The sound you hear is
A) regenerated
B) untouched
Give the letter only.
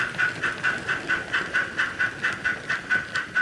B